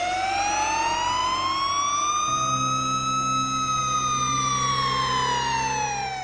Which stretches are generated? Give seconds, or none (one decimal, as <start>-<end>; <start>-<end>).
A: none